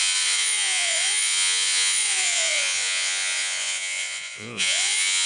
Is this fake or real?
fake